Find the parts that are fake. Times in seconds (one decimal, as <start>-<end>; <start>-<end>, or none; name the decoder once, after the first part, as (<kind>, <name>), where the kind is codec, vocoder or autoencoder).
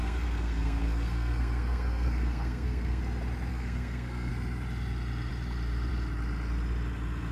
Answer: 0.0-3.0 (codec, SNAC); 3.5-4.3